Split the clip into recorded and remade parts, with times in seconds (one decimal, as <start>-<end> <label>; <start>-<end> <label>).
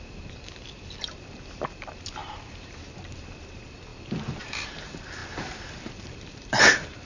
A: 0.0-0.6 remade; 0.6-1.7 recorded; 1.7-3.9 remade; 3.9-4.4 recorded; 4.4-7.1 remade